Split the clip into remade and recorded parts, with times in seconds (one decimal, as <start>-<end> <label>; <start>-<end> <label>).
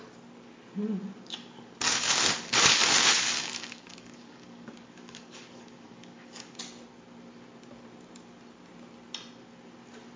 0.0-1.9 recorded; 1.9-6.6 remade; 6.6-10.2 recorded